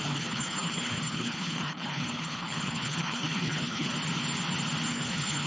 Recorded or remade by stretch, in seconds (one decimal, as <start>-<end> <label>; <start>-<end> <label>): 0.0-3.9 remade; 3.9-4.9 recorded; 4.9-5.5 remade